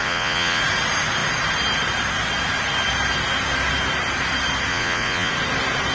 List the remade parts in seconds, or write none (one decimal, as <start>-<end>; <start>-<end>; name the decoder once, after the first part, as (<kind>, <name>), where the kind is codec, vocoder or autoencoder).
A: 0.0-0.6 (vocoder, Vocos); 4.7-5.3

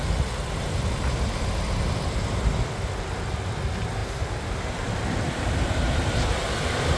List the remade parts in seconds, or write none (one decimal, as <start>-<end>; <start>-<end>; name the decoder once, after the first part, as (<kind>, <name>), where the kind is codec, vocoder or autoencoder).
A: none

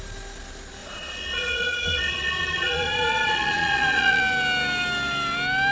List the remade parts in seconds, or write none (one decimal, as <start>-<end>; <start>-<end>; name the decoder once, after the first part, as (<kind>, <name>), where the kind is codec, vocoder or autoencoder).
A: 0.8-4.2 (vocoder, Vocos)

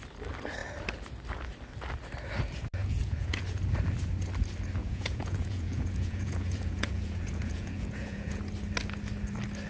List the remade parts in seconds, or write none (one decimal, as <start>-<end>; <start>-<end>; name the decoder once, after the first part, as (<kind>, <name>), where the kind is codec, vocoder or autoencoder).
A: 2.8-3.4 (vocoder, Vocos); 4.8-8.4

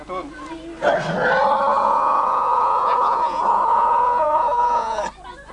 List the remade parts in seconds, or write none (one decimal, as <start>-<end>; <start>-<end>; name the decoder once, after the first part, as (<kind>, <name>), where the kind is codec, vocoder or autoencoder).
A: 1.7-5.0 (vocoder, Vocos)

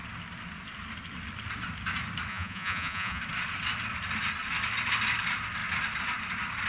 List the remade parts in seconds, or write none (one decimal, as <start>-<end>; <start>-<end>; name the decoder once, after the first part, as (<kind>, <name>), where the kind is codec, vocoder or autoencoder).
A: 2.3-3.2 (vocoder, Vocos)

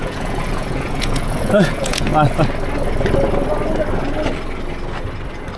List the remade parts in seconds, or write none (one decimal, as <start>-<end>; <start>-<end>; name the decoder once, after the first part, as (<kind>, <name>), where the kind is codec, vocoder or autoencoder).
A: 0.0-2.1 (vocoder, Vocos)

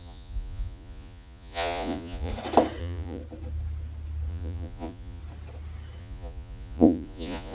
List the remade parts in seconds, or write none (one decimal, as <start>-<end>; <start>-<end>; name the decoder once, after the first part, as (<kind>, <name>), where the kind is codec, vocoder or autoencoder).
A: 0.0-2.3 (vocoder, Vocos); 2.8-3.2; 4.3-5.2; 6.0-7.5